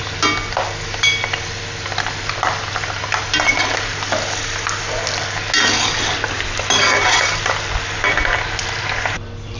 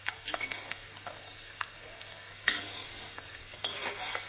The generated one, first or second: second